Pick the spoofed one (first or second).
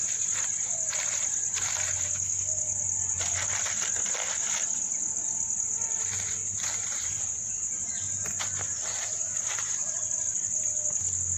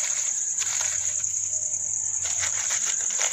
second